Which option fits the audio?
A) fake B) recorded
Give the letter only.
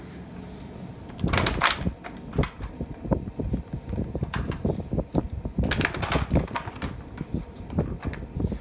B